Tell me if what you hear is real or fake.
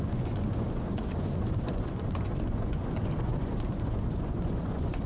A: fake